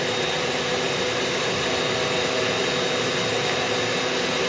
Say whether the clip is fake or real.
real